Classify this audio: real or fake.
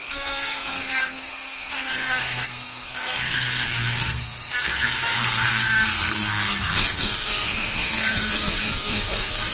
fake